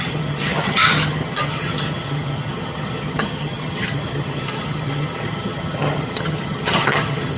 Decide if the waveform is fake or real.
fake